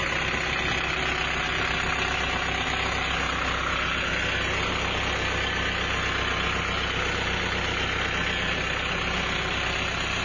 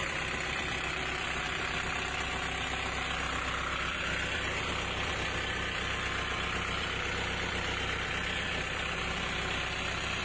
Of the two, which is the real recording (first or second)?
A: first